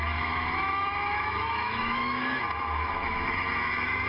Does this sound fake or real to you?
fake